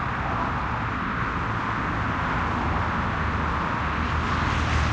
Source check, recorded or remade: recorded